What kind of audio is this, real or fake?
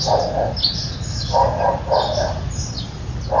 real